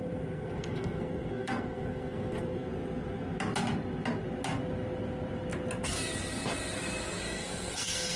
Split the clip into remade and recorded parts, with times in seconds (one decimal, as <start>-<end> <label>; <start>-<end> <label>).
0.0-2.7 remade; 2.7-7.2 recorded; 7.2-8.2 remade